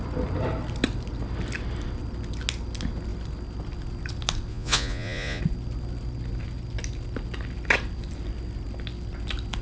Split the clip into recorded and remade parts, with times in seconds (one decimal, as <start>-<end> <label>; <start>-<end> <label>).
0.0-4.5 recorded; 4.5-5.4 remade; 5.4-9.6 recorded